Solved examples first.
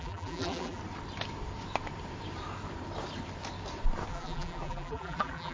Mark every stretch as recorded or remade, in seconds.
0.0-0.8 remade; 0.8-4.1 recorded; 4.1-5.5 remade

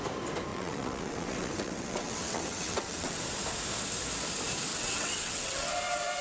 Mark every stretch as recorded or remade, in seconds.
0.0-0.5 recorded; 0.5-3.2 remade; 3.2-4.7 recorded; 4.7-5.7 remade; 5.7-6.2 recorded

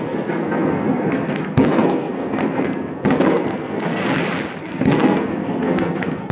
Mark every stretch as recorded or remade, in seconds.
0.0-4.0 remade; 4.0-4.6 recorded; 4.6-6.3 remade

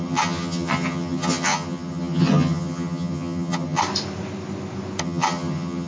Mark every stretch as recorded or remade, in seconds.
0.0-3.8 remade; 3.8-5.0 recorded; 5.0-5.9 remade

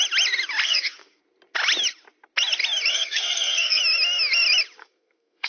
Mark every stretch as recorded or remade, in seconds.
0.0-0.6 recorded; 0.6-1.2 remade; 1.2-2.9 recorded; 2.9-3.8 remade; 3.8-4.8 recorded; 4.8-5.5 remade